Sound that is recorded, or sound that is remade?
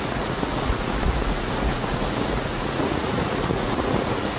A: remade